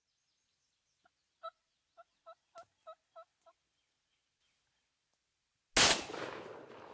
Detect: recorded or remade recorded